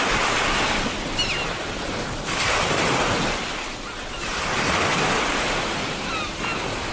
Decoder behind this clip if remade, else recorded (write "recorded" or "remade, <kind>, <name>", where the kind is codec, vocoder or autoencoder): recorded